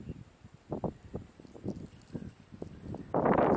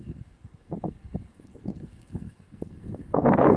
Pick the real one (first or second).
first